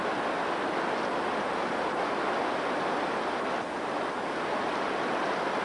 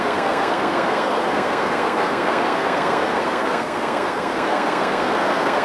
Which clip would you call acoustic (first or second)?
first